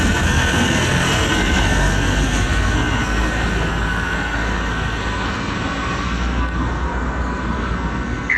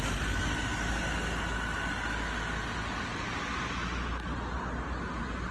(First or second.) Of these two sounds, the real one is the second